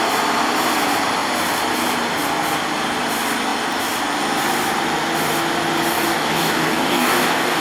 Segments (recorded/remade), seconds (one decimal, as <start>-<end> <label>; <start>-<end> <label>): 0.0-5.9 recorded; 5.9-7.6 remade